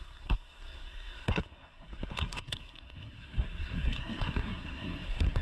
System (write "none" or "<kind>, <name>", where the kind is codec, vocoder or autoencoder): codec, SNAC